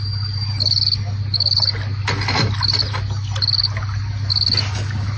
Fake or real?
real